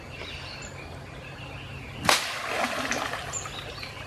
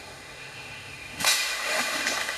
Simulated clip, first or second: second